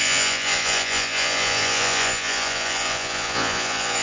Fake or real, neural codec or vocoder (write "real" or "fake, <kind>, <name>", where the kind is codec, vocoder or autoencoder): fake, vocoder, Vocos